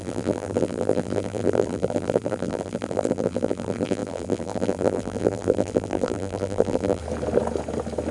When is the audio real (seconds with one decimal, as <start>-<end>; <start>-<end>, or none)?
7.0-8.1